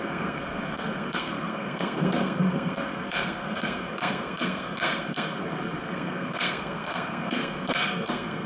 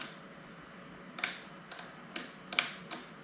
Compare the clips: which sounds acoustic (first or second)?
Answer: second